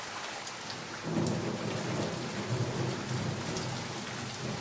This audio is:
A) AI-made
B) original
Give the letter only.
B